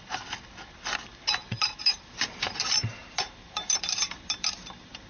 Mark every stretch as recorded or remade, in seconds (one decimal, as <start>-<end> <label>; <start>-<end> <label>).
0.0-1.8 recorded; 1.8-5.1 remade